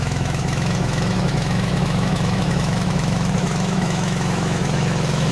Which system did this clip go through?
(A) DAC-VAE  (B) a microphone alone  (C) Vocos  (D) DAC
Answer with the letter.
A